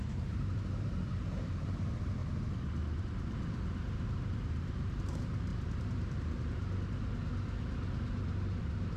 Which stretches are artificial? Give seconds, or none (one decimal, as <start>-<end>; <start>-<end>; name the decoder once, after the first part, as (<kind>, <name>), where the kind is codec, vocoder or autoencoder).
0.0-2.2 (vocoder, BigVGAN v2); 3.0-5.5; 8.6-9.0